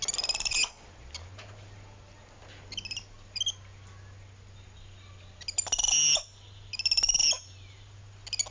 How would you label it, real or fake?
real